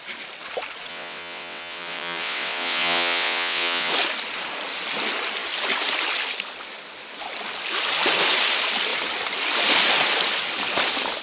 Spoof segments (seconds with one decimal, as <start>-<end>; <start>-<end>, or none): 0.9-3.9